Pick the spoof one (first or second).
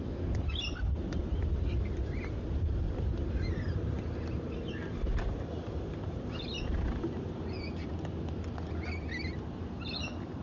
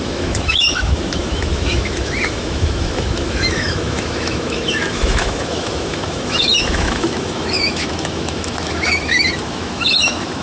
second